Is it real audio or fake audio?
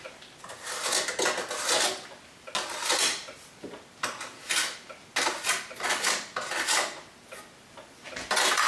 real